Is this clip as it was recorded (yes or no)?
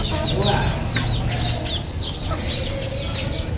yes